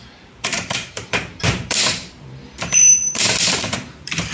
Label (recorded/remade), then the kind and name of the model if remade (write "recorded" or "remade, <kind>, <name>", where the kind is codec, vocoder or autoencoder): remade, vocoder, BigVGAN v2